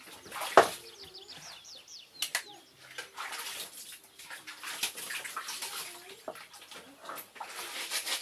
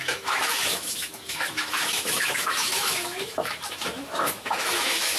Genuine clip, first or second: first